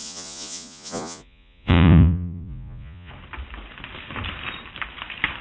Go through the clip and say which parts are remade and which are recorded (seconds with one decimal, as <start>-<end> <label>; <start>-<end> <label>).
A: 0.0-3.1 remade; 3.1-5.4 recorded